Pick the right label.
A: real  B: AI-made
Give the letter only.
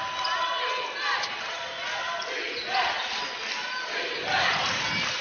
A